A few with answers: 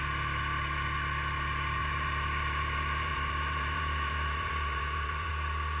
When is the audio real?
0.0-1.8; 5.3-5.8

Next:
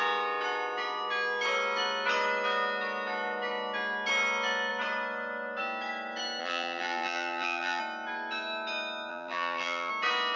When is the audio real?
0.0-6.4; 7.8-9.1; 9.9-10.4

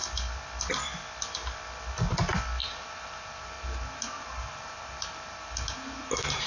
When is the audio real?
0.0-2.6